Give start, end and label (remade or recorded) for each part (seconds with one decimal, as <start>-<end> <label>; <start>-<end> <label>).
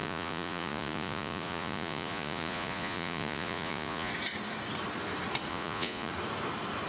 0.0-4.1 remade; 4.1-5.5 recorded; 5.5-6.1 remade; 6.1-6.9 recorded